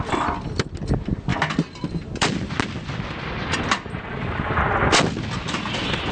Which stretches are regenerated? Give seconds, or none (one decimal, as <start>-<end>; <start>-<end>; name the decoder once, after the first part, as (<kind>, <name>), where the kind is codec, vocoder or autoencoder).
1.3-2.5 (vocoder, BigVGAN v2)